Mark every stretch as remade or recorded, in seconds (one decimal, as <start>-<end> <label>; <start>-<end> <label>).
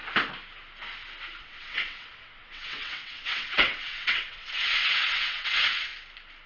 0.0-1.4 recorded; 1.4-5.9 remade; 5.9-6.5 recorded